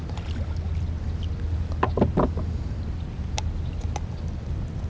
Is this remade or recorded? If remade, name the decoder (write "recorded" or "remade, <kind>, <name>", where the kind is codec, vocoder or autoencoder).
recorded